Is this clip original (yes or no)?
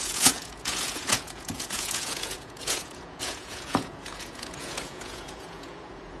no